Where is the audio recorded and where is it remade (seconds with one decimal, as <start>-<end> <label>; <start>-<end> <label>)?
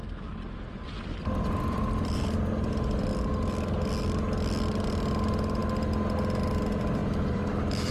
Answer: 0.0-3.1 remade; 3.1-7.0 recorded; 7.0-7.9 remade